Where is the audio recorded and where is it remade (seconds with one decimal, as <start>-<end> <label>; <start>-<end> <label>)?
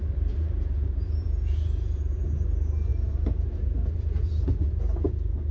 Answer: 0.0-2.2 remade; 2.2-2.9 recorded; 2.9-4.7 remade; 4.7-5.5 recorded